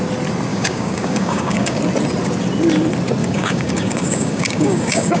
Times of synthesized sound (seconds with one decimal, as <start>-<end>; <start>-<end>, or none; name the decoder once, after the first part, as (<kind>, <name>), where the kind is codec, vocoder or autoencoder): 0.5-1.8 (codec, DAC); 3.2-5.2